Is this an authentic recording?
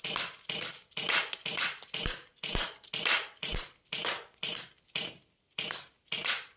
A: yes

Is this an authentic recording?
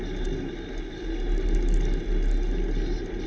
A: yes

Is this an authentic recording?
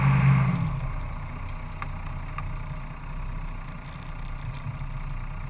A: yes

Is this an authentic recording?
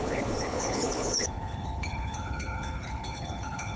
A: no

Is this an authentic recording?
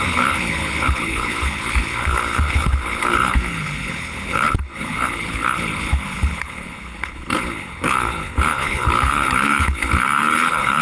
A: no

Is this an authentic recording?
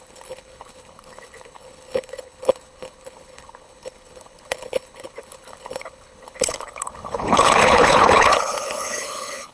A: no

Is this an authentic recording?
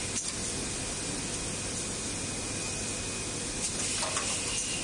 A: yes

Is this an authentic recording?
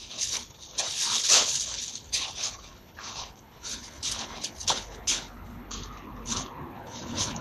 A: no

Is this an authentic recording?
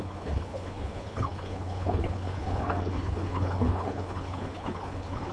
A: no